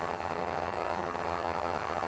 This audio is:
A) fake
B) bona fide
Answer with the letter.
A